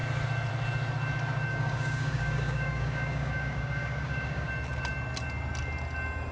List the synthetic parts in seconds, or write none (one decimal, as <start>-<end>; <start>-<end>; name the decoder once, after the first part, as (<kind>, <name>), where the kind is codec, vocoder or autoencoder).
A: 1.5-4.5 (codec, DAC)

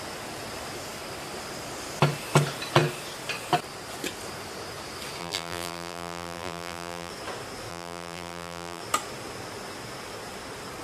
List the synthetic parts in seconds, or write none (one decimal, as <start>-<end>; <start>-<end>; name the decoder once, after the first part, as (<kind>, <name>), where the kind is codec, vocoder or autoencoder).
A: 5.2-7.1 (vocoder, BigVGAN v2); 7.7-8.8

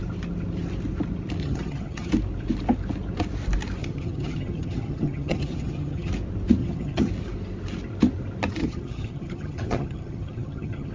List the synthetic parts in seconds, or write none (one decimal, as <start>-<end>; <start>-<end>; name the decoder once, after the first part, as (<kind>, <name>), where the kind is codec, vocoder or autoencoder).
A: 1.4-2.1 (vocoder, HiFi-GAN); 3.8-6.1; 6.6-7.1; 8.6-10.9

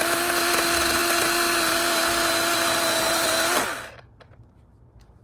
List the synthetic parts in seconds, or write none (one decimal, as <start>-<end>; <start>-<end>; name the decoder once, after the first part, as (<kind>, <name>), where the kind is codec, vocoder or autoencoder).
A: none